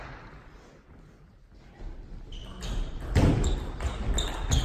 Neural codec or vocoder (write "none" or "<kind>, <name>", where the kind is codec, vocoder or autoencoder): none